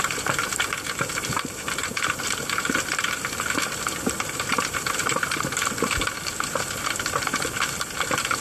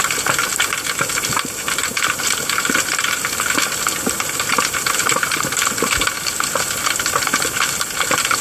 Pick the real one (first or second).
second